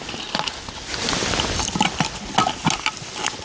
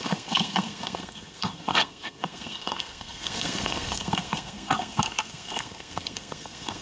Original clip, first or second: first